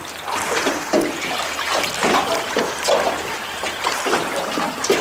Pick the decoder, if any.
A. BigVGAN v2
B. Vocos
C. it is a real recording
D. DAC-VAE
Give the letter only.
C